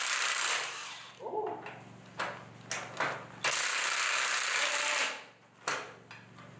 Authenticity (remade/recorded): recorded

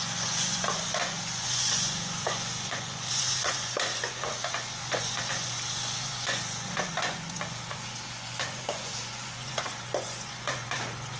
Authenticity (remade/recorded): remade